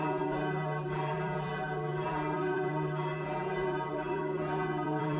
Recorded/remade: remade